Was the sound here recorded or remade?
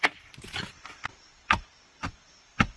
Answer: recorded